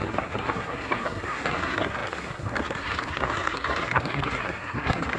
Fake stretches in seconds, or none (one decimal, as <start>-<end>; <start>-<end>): 0.0-5.2